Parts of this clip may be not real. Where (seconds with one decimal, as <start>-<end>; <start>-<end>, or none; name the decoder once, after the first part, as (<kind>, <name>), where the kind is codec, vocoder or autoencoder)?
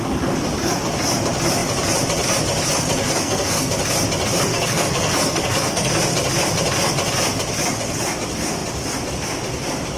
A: 3.0-3.7 (codec, SNAC); 4.3-5.9